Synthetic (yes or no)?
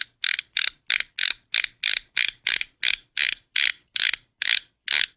no